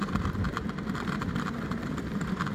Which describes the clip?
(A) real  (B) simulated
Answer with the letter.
B